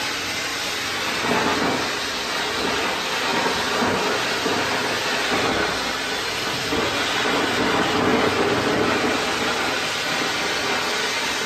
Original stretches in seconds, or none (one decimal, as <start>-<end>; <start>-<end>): 0.0-11.5